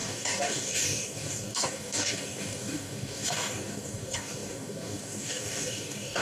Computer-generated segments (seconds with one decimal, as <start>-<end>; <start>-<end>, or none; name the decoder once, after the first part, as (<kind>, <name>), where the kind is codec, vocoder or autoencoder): 0.0-6.2 (codec, DAC)